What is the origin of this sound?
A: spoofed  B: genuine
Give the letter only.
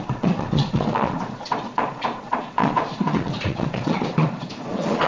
A